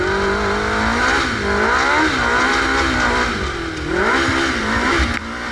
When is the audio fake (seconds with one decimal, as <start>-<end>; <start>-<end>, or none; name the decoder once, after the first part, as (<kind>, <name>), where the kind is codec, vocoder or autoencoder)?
none